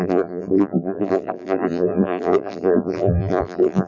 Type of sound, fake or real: fake